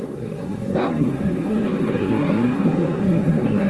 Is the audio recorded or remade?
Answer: remade